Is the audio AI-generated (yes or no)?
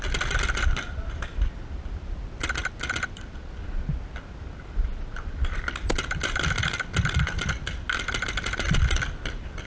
no